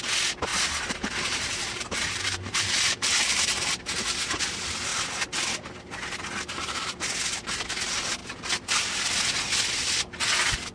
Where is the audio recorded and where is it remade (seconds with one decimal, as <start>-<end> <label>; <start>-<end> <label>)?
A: 0.0-0.5 recorded; 0.5-3.7 remade; 3.7-10.7 recorded